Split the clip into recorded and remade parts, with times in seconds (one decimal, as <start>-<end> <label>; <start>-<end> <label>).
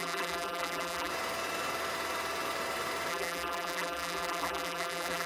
0.0-1.1 remade; 1.1-3.1 recorded; 3.1-5.3 remade